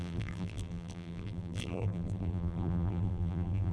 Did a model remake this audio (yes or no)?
yes